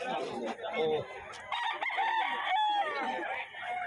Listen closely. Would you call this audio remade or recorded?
recorded